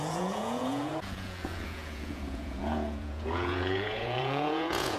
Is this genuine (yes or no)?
no